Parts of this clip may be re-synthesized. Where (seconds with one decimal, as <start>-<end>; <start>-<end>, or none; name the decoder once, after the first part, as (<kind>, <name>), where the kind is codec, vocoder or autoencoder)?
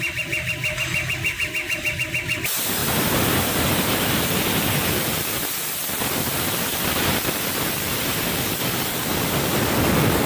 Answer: 0.6-1.9 (vocoder, BigVGAN v2); 2.8-3.9; 6.7-9.0